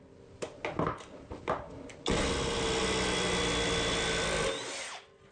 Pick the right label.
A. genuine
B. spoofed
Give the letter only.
A